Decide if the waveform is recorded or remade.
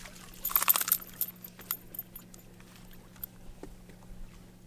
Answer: recorded